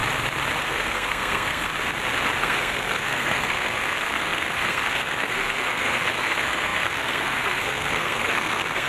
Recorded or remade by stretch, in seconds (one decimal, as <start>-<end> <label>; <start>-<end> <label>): 0.0-0.6 recorded; 0.6-1.7 remade; 1.7-2.4 recorded; 2.4-8.9 remade